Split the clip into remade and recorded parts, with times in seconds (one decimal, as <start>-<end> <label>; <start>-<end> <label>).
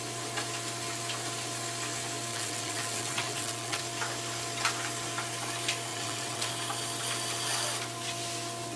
0.0-2.3 recorded; 2.3-3.8 remade; 3.8-5.9 recorded; 5.9-6.5 remade; 6.5-8.8 recorded